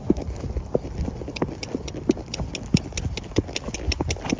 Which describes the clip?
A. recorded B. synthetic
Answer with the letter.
A